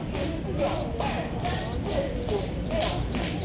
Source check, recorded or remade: recorded